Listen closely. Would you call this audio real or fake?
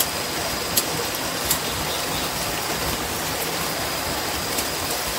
real